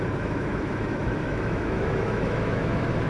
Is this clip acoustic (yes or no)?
no